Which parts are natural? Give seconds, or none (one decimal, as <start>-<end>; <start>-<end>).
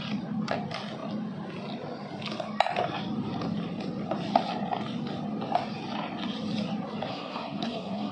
0.0-7.1